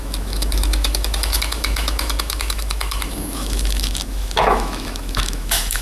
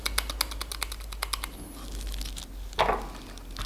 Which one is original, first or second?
second